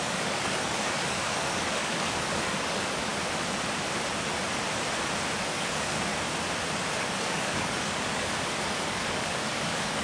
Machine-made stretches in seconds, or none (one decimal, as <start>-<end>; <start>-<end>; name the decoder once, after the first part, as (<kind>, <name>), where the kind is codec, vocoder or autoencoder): 0.0-3.1 (codec, DAC); 5.4-6.1; 7.0-10.0